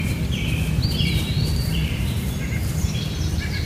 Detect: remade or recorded remade